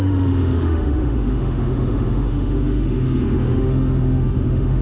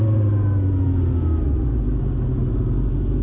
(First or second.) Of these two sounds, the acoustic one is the second